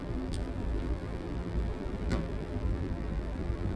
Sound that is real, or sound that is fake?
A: fake